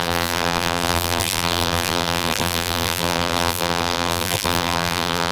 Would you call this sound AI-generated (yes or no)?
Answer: yes